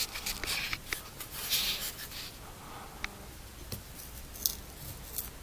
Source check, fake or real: real